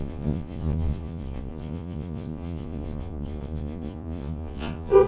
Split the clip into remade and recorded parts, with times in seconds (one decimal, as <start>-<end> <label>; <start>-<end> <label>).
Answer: 0.0-5.1 remade